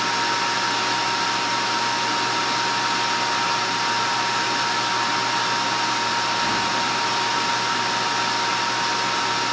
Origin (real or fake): real